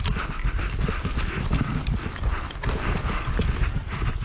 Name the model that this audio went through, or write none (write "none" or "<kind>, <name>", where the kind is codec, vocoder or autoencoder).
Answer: none